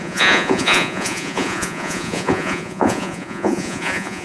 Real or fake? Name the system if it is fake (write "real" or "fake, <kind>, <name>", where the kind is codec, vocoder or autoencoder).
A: fake, vocoder, Vocos